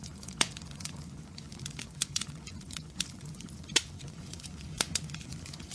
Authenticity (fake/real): fake